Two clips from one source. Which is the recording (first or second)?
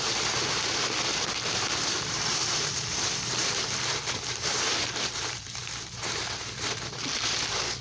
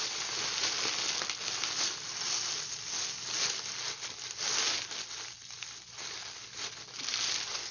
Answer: second